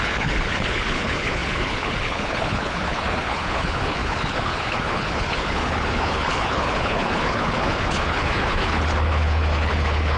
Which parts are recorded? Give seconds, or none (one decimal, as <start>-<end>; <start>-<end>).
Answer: none